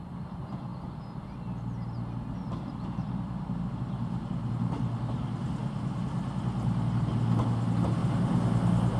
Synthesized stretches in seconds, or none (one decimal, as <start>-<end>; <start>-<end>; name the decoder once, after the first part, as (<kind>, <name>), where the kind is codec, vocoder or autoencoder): none

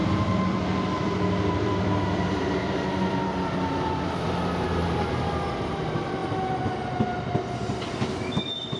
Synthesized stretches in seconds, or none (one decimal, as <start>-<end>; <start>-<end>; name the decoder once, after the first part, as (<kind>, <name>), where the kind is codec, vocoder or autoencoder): 0.0-5.1 (vocoder, BigVGAN v2)

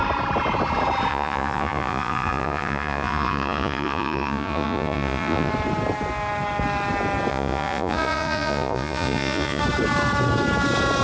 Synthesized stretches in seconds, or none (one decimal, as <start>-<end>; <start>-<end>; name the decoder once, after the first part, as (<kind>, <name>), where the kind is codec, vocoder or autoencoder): 1.1-5.5 (vocoder, Vocos); 7.3-9.6

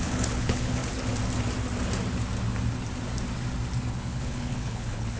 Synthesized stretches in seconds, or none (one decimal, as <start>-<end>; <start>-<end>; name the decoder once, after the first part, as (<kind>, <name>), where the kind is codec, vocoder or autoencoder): 0.0-0.8 (codec, HILCodec); 3.9-5.2

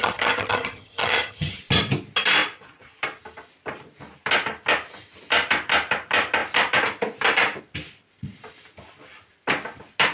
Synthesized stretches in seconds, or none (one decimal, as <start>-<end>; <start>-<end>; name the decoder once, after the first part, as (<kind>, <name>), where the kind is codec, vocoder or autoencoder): 0.0-1.6 (vocoder, HiFi-GAN)

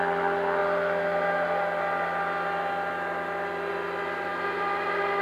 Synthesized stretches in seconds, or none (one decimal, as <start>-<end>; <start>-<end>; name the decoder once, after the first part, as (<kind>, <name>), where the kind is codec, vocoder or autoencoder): none